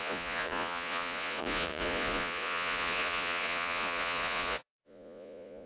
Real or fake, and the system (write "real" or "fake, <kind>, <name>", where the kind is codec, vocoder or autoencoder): fake, vocoder, Vocos